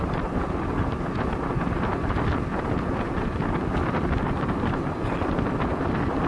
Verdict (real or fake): fake